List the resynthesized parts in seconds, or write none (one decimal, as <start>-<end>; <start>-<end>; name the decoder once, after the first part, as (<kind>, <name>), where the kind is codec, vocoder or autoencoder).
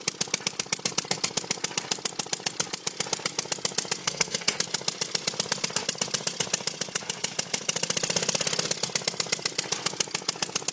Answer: 4.0-4.6 (codec, SNAC)